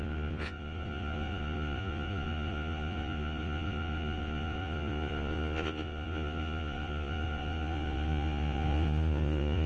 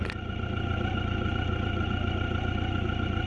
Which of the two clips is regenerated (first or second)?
first